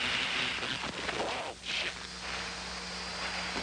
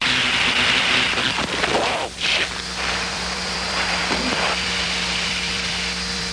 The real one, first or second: first